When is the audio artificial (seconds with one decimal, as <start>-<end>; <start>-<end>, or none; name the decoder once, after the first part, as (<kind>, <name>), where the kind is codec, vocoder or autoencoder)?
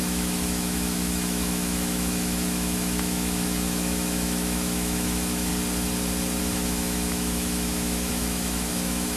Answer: 0.0-5.5 (autoencoder, DAC-VAE); 6.4-9.2